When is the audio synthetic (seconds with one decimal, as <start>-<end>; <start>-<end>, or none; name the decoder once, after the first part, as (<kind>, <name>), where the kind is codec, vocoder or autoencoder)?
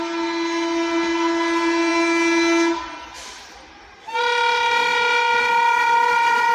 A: none